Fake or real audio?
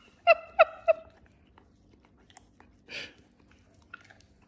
real